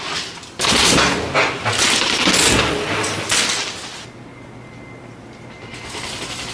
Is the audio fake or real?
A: real